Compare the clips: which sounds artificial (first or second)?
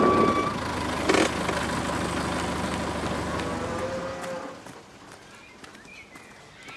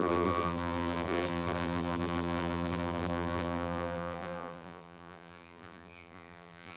second